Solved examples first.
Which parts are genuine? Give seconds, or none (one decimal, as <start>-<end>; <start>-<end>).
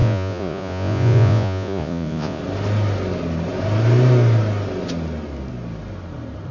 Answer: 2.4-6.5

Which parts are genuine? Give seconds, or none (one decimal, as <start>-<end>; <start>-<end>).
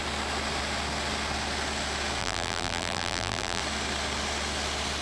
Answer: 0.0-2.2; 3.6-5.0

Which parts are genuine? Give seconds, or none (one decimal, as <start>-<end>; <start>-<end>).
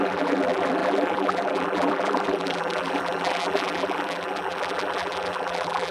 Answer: none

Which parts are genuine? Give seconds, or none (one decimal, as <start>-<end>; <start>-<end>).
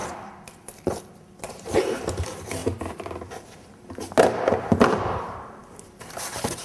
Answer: 2.6-4.7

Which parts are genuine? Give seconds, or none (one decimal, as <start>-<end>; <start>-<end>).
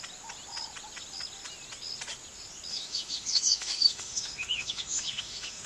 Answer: 0.0-2.7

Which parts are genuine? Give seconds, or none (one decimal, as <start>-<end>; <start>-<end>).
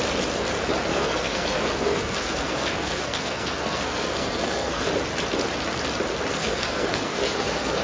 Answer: 0.0-0.9; 4.9-6.3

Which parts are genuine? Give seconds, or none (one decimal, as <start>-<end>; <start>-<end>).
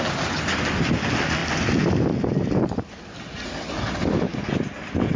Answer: 0.0-5.2